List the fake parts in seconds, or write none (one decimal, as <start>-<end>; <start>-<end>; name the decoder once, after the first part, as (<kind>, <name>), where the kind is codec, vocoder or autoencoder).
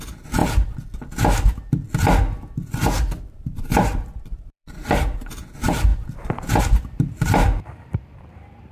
0.0-0.4 (vocoder, BigVGAN v2); 3.2-5.9; 6.6-8.7